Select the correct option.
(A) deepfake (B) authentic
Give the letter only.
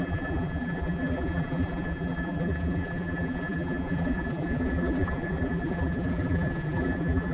A